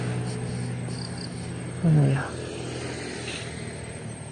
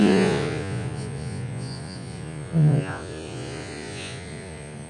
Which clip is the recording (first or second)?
first